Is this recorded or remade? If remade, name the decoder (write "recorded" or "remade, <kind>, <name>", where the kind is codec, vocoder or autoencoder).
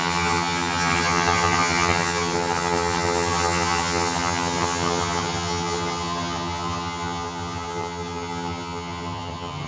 remade, vocoder, HiFi-GAN